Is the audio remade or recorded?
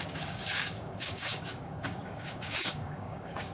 remade